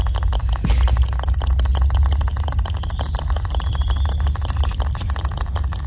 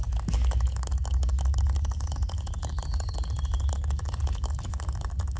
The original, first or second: first